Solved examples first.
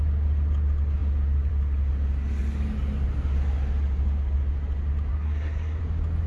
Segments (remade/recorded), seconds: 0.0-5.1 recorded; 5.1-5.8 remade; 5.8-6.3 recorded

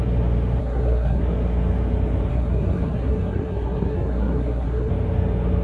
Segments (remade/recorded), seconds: 0.0-0.6 recorded; 0.6-1.2 remade; 1.2-2.3 recorded; 2.3-4.9 remade; 4.9-5.6 recorded

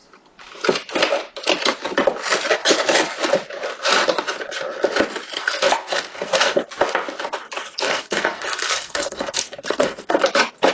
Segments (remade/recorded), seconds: 0.0-5.4 recorded; 5.4-6.6 remade; 6.6-7.6 recorded; 7.6-10.2 remade; 10.2-10.7 recorded

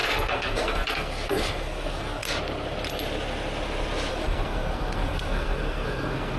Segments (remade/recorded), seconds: 0.0-2.2 remade; 2.2-4.1 recorded; 4.1-6.4 remade

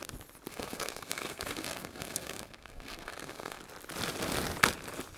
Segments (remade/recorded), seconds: 0.0-0.5 recorded; 0.5-3.6 remade; 3.6-5.2 recorded

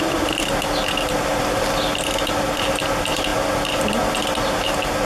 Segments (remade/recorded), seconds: 0.0-5.0 recorded